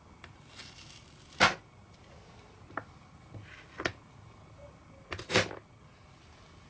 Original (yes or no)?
yes